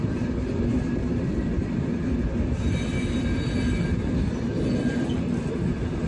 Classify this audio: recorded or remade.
recorded